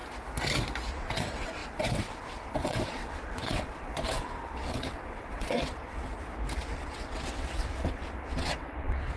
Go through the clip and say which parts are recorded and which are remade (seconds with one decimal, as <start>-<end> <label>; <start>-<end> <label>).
0.0-0.9 recorded; 0.9-6.1 remade; 6.1-6.6 recorded; 6.6-9.2 remade